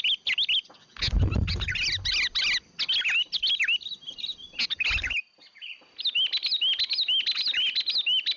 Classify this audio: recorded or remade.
recorded